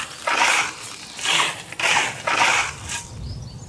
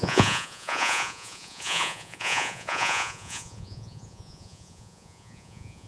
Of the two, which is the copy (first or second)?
second